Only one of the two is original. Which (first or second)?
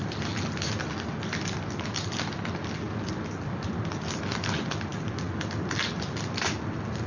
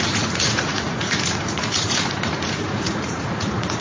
first